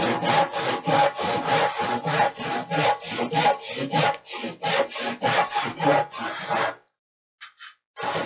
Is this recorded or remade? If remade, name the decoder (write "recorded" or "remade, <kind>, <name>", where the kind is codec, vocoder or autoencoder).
recorded